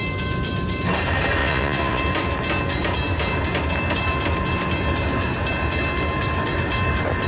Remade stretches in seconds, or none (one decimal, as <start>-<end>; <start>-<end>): 1.4-2.0

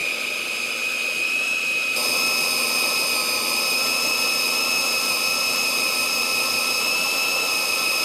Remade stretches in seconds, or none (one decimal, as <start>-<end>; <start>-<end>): 0.0-8.0

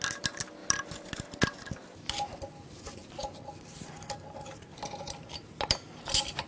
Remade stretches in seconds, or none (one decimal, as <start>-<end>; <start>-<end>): none

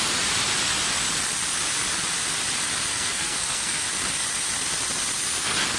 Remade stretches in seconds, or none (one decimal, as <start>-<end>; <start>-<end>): 2.9-3.8

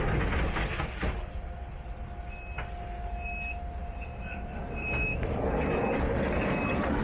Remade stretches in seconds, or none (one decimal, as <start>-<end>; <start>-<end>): 1.0-1.6; 3.8-5.6

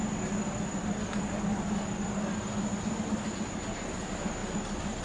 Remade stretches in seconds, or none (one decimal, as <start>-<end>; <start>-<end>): none

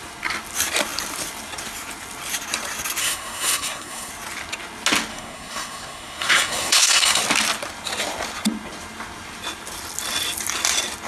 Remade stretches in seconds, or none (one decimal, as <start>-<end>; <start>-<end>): 3.0-4.1; 5.1-7.2